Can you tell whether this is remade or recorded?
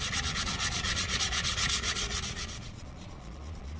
remade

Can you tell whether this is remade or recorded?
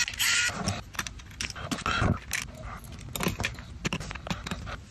recorded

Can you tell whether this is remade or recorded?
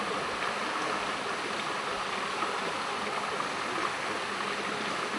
recorded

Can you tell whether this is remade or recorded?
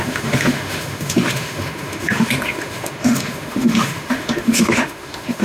remade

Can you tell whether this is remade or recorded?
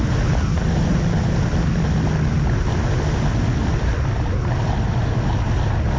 recorded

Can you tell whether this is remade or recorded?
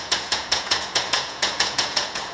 remade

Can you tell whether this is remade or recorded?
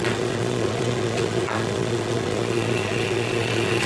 remade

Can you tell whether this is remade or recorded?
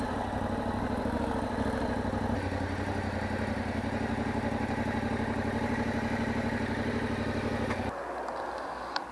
recorded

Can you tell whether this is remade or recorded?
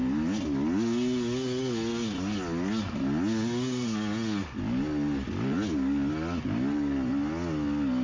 recorded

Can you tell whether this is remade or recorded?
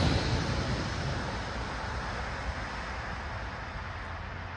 recorded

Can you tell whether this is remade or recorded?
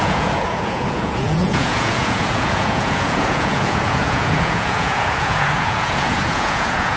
remade